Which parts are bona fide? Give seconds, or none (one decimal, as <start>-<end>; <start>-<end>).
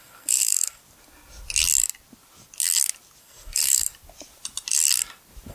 0.8-3.2; 3.9-5.5